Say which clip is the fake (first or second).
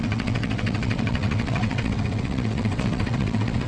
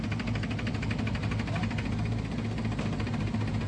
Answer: first